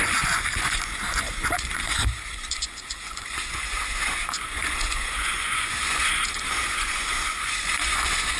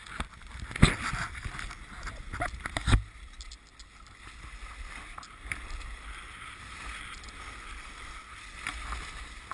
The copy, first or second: first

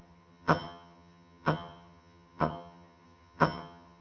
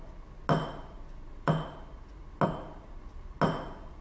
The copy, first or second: first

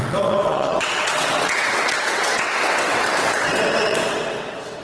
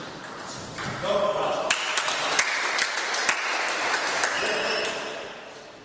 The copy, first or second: first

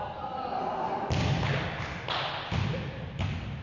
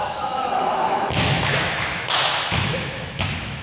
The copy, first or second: second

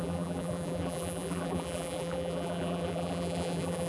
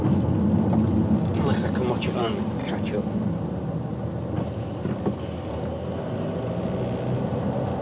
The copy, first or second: first